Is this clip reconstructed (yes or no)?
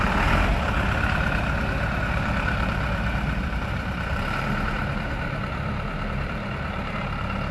yes